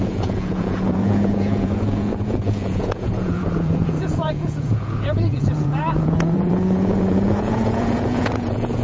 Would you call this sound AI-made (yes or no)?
yes